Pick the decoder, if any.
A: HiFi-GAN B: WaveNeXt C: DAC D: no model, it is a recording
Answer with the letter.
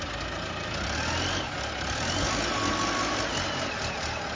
D